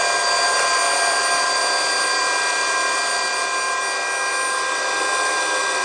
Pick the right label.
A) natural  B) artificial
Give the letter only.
A